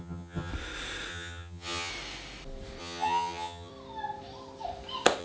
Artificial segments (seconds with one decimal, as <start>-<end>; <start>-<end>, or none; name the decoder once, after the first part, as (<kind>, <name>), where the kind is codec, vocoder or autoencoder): 0.0-0.5 (vocoder, HiFi-GAN); 1.1-1.9; 2.8-3.7